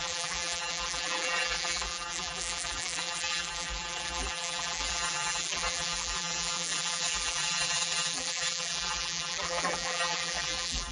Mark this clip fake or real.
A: fake